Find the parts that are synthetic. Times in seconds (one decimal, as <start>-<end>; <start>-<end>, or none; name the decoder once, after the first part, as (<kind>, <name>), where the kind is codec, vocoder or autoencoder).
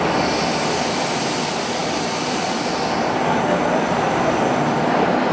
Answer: none